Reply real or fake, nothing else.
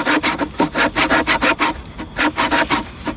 real